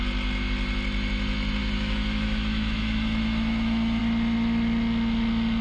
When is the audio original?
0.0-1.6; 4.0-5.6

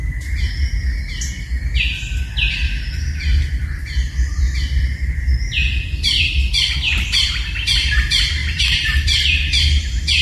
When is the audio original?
0.0-8.4; 9.6-10.2